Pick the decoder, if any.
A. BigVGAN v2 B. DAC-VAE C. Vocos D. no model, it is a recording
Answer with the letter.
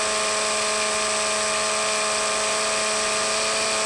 D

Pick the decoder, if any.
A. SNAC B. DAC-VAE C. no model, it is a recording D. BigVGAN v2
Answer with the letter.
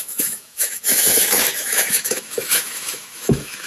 B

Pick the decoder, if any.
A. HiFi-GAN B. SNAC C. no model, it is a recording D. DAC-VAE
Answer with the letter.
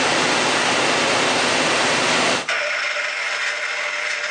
C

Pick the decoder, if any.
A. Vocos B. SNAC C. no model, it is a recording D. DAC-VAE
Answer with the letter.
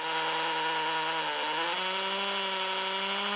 C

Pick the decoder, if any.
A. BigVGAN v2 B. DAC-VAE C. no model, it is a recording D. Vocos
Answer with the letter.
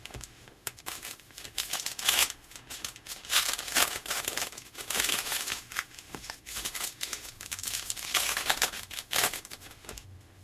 B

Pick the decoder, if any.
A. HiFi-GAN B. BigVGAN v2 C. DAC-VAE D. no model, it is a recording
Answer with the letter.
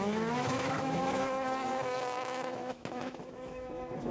C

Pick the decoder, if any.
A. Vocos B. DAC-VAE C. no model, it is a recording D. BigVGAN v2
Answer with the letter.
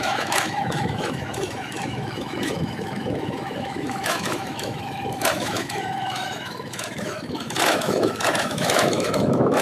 B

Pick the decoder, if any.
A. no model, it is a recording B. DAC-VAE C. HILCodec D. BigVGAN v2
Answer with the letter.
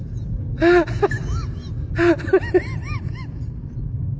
A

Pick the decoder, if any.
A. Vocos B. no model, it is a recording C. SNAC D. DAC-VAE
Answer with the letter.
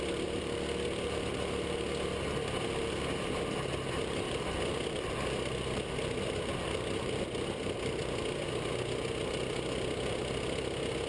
B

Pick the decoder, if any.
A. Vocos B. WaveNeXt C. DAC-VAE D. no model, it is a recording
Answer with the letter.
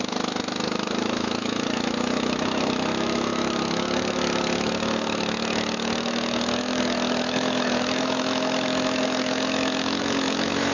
C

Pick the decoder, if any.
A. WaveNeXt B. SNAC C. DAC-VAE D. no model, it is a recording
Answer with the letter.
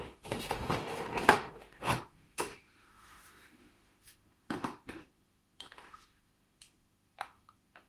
C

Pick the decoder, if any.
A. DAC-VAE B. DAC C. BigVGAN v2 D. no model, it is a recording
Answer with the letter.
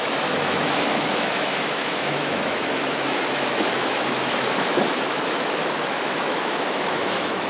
A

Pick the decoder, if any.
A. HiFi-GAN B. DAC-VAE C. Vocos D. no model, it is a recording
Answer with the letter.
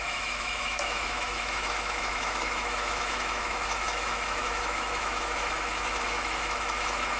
B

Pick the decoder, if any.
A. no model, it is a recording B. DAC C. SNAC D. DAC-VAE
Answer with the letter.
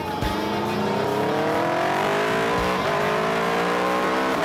A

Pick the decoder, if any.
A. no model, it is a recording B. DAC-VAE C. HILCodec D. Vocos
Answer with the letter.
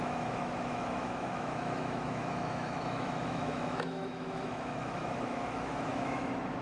B